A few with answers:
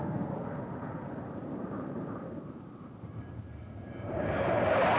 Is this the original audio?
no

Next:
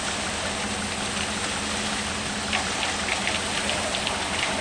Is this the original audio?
yes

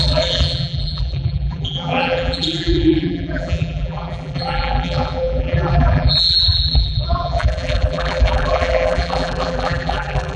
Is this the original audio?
no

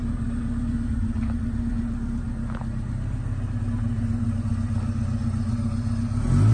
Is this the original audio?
yes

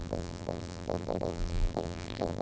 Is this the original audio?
no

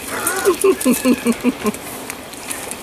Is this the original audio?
no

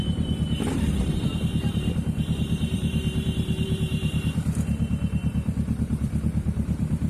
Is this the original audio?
no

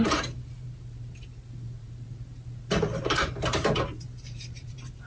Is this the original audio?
no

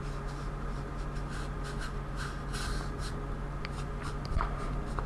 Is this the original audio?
yes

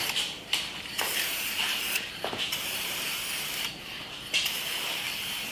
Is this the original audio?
no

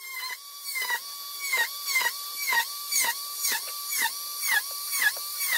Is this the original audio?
no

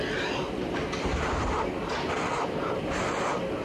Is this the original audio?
yes